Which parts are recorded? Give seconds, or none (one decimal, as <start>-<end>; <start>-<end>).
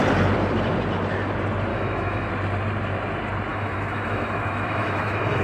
0.0-1.7; 2.3-3.5